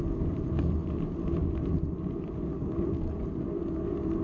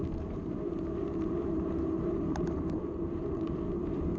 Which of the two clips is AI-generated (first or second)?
second